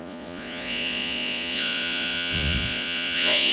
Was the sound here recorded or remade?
remade